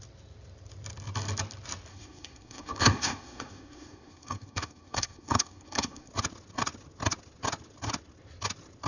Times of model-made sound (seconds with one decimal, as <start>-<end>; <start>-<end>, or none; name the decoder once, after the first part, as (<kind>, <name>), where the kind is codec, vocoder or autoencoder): 1.9-6.1 (codec, SNAC)